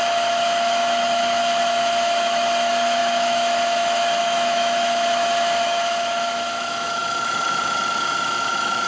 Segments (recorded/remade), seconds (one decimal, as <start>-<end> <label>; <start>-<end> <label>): 0.0-8.9 remade